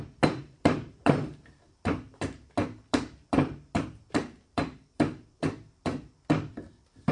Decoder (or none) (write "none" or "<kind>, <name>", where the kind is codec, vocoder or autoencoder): vocoder, BigVGAN v2